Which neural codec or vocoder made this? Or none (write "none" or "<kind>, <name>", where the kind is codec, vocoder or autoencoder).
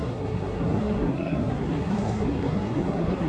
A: codec, SNAC